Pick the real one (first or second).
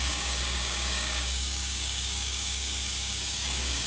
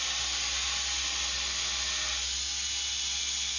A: second